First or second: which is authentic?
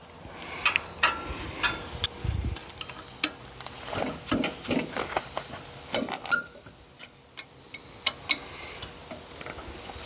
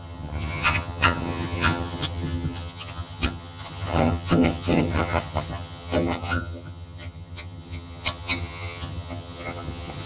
first